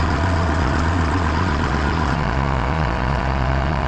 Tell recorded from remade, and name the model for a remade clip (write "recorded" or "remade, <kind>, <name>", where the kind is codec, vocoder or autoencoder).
remade, vocoder, Vocos